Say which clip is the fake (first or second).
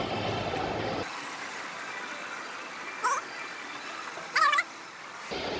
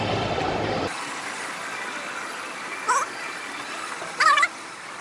second